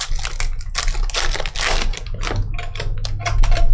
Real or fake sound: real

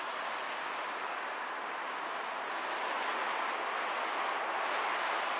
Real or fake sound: real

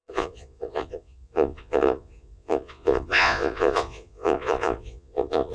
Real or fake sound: fake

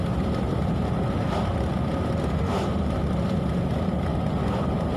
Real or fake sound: real